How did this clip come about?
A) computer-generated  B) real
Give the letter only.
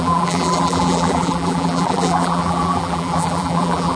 A